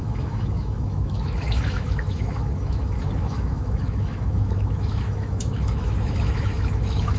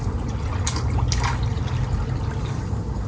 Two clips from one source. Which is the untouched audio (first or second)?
second